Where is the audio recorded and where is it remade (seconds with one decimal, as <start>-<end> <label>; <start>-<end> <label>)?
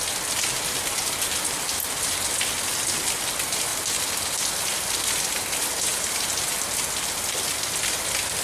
0.0-8.4 recorded